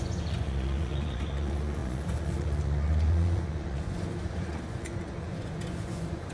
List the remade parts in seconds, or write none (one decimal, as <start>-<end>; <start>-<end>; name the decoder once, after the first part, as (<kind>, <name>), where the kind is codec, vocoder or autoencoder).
0.0-6.3 (vocoder, Vocos)